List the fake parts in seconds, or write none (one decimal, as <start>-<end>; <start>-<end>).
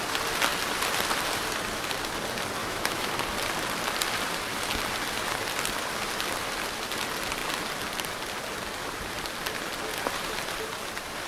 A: 2.6-3.1